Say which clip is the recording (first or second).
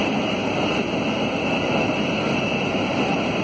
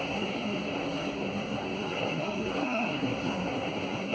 first